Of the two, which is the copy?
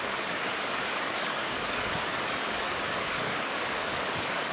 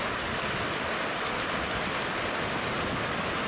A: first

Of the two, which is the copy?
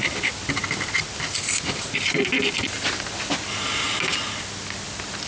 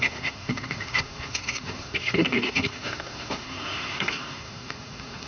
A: second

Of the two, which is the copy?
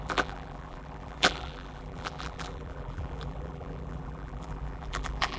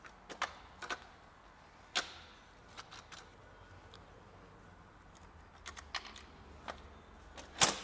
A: first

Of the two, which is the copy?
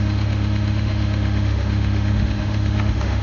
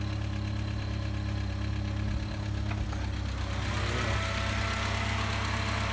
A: first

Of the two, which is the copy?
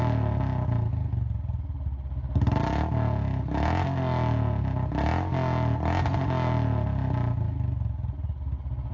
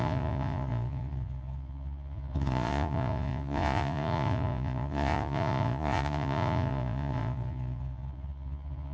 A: second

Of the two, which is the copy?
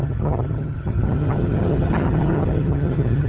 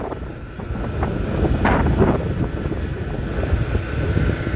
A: first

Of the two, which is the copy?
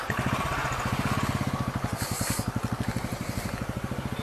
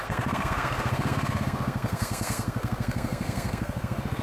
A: second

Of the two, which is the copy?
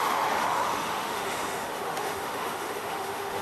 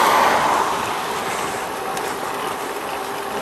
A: first